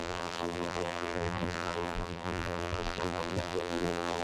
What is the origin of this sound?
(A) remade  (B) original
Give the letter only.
A